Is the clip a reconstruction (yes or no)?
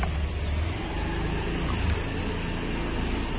no